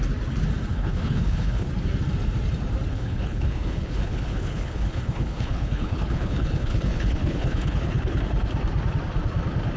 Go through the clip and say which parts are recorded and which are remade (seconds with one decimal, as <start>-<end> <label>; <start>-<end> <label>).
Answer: 0.0-0.7 recorded; 0.7-1.7 remade; 1.7-2.9 recorded; 2.9-8.2 remade; 8.2-9.8 recorded